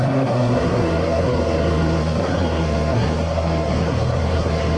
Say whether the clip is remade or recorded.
remade